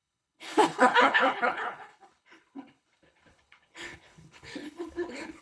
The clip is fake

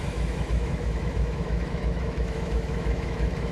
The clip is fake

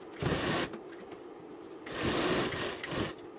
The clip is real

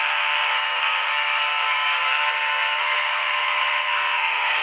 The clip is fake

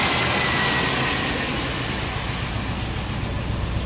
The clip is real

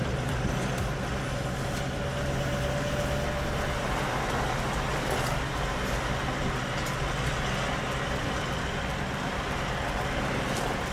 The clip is real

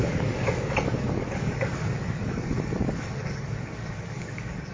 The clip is fake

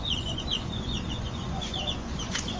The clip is fake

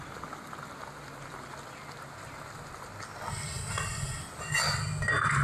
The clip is real